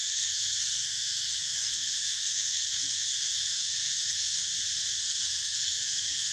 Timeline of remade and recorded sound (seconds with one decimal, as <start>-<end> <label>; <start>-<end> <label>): 0.0-4.5 remade; 4.5-5.0 recorded; 5.0-6.3 remade

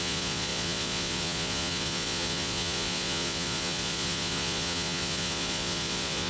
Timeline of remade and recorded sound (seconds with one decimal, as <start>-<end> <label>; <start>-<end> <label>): 0.0-6.3 remade

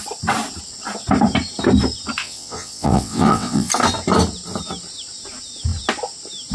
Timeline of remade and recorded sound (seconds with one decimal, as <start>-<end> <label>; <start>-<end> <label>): 0.0-2.2 recorded; 2.2-3.7 remade; 3.7-6.5 recorded

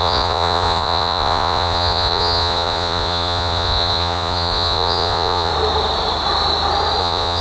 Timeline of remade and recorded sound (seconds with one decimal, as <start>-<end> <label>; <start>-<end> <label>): 0.0-5.5 remade; 5.5-7.0 recorded; 7.0-7.4 remade

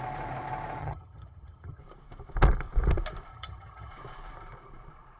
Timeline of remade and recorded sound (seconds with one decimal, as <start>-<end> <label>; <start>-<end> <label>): 0.0-0.8 recorded; 0.8-1.8 remade; 1.8-3.3 recorded; 3.3-3.9 remade; 3.9-5.2 recorded